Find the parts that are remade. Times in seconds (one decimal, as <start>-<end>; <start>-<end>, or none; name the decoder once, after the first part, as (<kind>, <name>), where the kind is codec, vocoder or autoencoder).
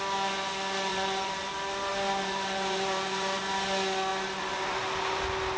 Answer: 0.9-1.5 (vocoder, BigVGAN v2); 1.9-3.4